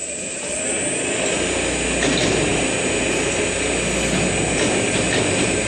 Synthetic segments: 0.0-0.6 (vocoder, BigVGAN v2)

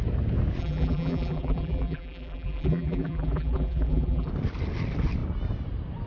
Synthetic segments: 0.6-4.3 (vocoder, BigVGAN v2)

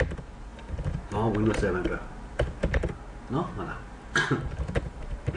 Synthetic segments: 0.0-5.4 (vocoder, BigVGAN v2)

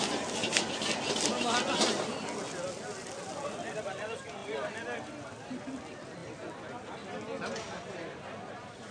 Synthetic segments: 0.4-1.0 (vocoder, BigVGAN v2); 4.4-5.7

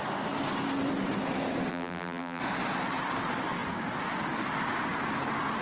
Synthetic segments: 1.7-2.4 (vocoder, BigVGAN v2)

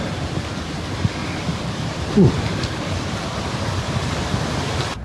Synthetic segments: 1.2-3.6 (vocoder, BigVGAN v2)